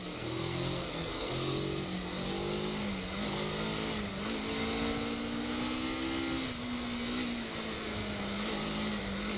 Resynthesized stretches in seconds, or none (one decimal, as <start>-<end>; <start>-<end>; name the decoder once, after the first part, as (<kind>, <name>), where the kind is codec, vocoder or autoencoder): 0.0-1.3 (codec, SNAC)